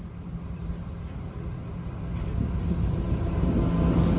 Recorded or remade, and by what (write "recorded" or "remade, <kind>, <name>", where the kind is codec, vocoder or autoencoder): recorded